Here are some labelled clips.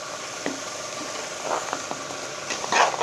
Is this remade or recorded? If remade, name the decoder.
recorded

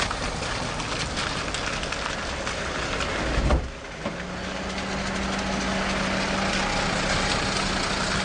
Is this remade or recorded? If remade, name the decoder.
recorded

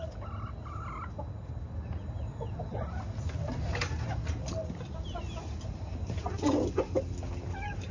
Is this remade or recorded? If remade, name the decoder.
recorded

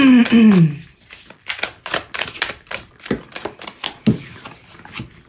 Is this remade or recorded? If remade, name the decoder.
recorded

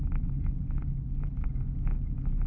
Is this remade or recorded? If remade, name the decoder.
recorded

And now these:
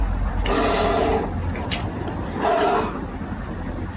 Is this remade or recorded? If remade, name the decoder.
recorded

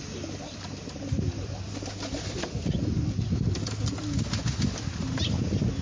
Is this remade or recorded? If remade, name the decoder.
recorded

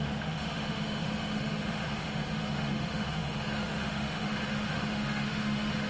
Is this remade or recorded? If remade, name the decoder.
remade, autoencoder, DAC-VAE